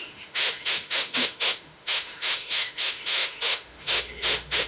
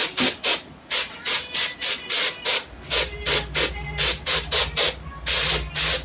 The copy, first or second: first